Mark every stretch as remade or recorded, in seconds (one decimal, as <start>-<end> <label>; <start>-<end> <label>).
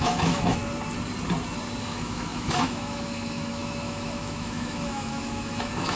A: 0.0-0.6 remade; 0.6-1.8 recorded; 1.8-6.0 remade